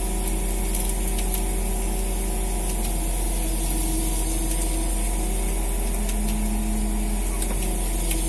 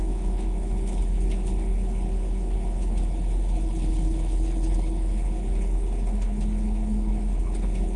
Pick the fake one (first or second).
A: second